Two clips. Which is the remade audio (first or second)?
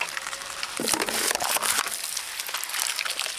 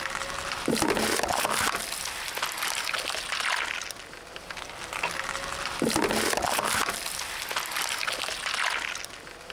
first